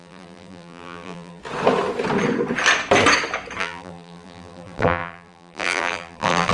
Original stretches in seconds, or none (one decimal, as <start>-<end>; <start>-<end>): 1.4-3.6